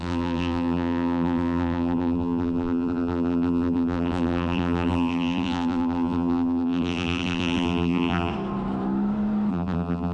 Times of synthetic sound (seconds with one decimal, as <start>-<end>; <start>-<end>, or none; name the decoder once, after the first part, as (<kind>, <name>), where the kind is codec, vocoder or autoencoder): 0.0-8.3 (vocoder, BigVGAN v2); 9.5-10.1